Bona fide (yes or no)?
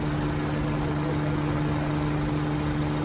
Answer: yes